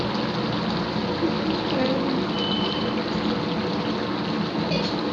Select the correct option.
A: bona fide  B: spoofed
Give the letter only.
A